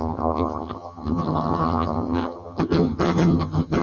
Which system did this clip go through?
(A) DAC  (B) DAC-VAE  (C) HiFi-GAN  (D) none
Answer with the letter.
C